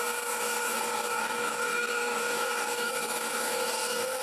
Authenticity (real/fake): fake